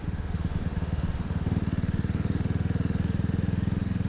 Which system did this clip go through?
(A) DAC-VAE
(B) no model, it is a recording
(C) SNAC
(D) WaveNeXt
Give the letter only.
A